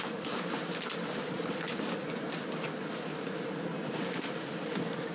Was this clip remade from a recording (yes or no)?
no